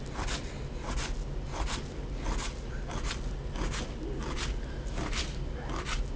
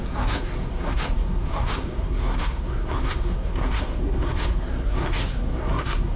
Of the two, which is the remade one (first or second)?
second